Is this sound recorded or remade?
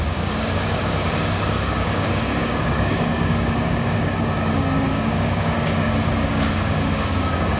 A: remade